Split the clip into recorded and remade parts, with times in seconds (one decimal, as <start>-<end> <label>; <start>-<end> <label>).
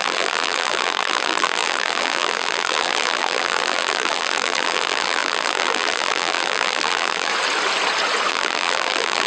0.0-7.3 remade; 7.3-8.3 recorded; 8.3-9.3 remade